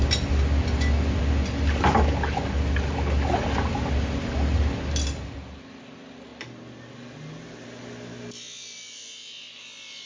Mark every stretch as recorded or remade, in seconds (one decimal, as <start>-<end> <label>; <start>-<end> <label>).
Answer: 0.0-10.1 recorded